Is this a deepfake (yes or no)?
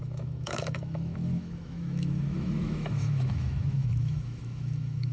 yes